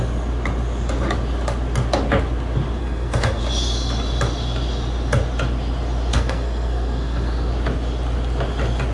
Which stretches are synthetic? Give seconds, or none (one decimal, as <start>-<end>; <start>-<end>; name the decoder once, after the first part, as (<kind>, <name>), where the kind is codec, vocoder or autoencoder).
2.8-3.4 (codec, SNAC); 6.1-7.5